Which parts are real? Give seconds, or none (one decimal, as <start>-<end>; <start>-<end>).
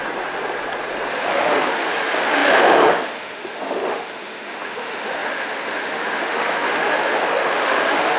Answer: 0.0-1.1